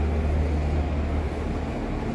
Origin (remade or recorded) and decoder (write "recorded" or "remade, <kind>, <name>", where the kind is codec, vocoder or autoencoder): recorded